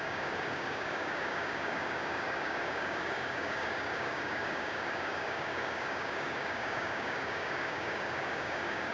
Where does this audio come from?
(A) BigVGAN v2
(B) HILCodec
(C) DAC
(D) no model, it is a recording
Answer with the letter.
C